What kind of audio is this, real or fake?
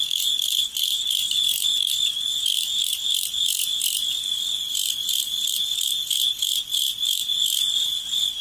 real